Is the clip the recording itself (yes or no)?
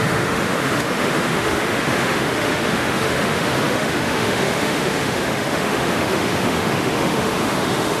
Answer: no